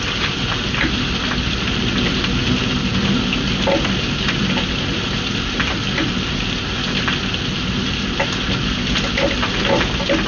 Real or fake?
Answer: real